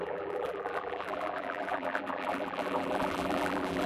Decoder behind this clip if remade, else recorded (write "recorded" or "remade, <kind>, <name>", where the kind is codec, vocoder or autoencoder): remade, vocoder, BigVGAN v2